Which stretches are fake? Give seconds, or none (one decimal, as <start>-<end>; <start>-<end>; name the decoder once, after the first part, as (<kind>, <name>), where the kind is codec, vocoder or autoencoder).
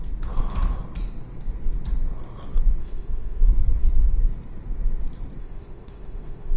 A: 2.8-3.5 (autoencoder, DAC-VAE); 5.4-6.6